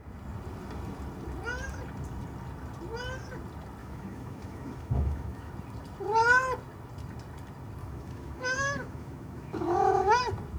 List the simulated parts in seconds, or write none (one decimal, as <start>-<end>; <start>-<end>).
3.8-5.5; 7.8-10.2